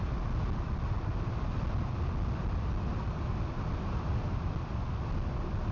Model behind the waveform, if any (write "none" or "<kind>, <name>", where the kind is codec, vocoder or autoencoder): none